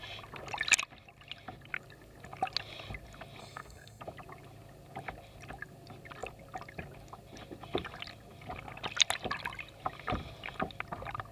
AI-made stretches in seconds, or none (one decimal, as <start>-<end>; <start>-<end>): 3.4-4.0